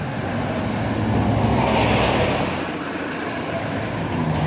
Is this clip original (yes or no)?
yes